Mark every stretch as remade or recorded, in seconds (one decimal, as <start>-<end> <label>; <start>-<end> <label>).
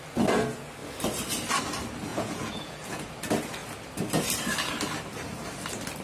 0.0-2.1 recorded; 2.1-3.1 remade; 3.1-6.0 recorded